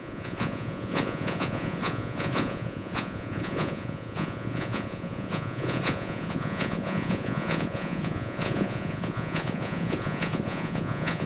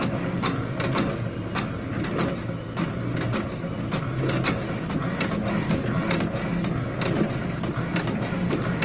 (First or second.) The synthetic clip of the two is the first